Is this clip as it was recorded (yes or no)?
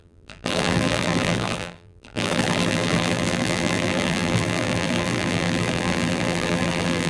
no